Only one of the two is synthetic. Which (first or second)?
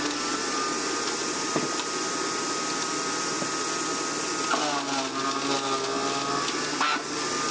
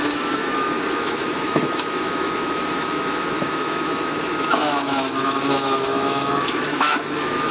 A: second